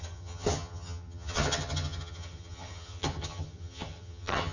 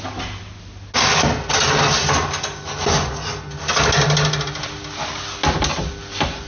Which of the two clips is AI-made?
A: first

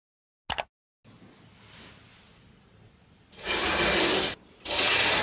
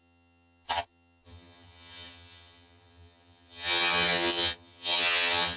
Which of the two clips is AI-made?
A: second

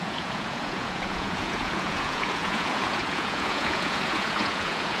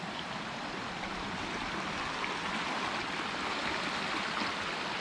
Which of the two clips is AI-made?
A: first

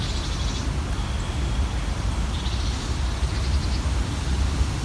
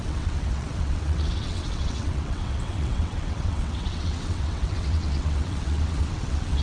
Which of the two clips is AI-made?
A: second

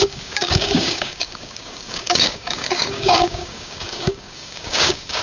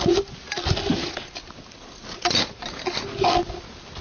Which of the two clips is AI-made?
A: first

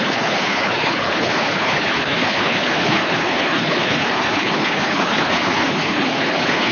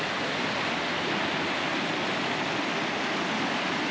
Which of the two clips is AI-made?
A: first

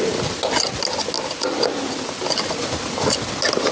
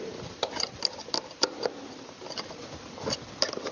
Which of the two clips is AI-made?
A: second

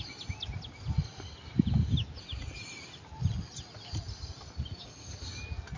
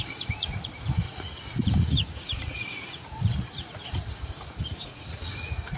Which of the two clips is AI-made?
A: second